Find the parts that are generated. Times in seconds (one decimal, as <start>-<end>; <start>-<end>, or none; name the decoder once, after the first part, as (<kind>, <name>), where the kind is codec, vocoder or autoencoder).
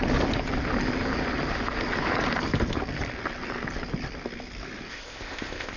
4.9-5.8 (codec, ZipCodec)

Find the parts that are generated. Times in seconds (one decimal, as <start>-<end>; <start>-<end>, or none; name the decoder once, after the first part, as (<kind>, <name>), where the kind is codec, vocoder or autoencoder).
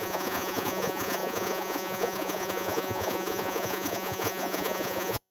0.0-5.3 (vocoder, Vocos)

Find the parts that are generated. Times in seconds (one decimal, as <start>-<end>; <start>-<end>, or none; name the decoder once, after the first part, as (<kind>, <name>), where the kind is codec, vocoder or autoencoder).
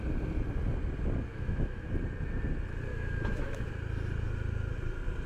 1.3-1.9 (autoencoder, DAC-VAE); 2.9-3.7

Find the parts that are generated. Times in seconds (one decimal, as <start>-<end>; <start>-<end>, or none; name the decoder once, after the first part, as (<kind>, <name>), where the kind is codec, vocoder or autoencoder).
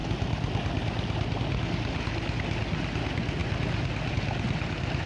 none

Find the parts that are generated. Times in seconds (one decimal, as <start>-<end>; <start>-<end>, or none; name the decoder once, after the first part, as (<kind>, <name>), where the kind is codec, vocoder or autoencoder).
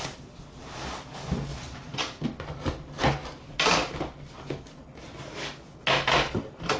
none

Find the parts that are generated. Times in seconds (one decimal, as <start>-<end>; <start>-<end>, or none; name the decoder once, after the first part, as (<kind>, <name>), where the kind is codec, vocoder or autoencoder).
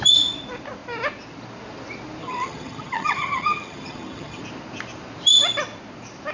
2.2-4.4 (vocoder, HiFi-GAN)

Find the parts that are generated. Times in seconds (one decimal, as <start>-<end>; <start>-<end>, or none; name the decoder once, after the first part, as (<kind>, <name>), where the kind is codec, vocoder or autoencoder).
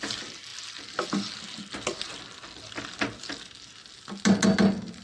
none